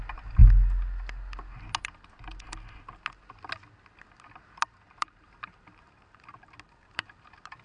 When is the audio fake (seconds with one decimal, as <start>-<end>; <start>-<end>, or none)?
0.0-0.4; 4.3-7.6